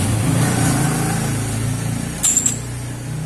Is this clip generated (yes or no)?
no